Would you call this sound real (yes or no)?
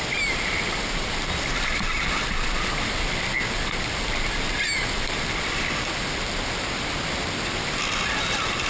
yes